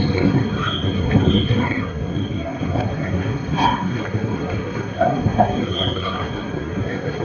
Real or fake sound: fake